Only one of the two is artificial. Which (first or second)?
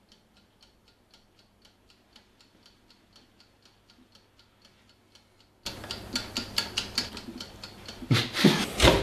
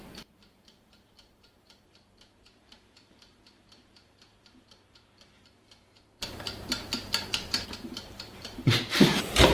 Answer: second